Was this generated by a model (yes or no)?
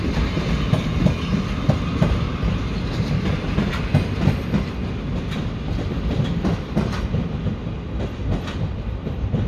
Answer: no